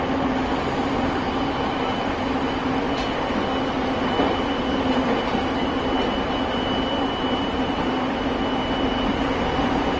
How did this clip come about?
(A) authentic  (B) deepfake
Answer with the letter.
A